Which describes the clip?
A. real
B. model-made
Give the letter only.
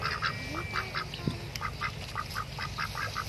A